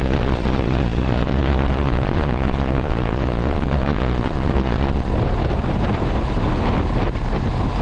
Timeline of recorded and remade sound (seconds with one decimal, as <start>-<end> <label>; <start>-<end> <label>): 0.0-5.1 remade; 5.1-7.8 recorded